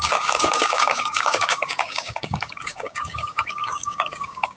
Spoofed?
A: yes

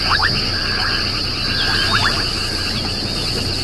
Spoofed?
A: no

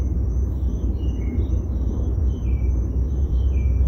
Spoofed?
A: yes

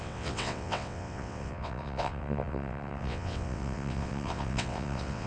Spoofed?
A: yes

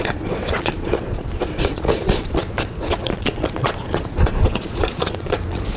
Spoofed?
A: yes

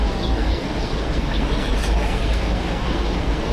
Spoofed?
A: yes